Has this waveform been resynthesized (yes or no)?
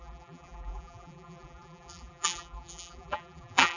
yes